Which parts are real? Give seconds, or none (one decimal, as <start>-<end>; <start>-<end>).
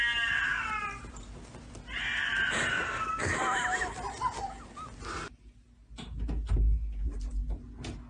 0.0-8.1